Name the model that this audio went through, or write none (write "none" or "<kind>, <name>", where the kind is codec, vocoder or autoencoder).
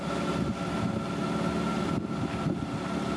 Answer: none